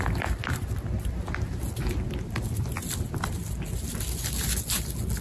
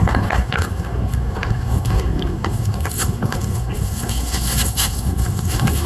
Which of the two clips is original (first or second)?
first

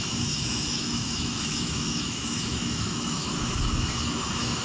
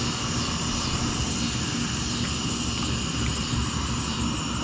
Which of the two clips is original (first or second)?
second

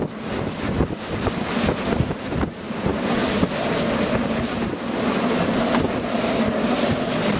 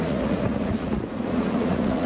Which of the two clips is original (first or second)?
first